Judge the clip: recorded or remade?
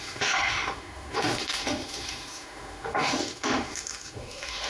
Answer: remade